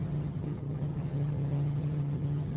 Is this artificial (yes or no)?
yes